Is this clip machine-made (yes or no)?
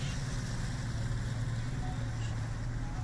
no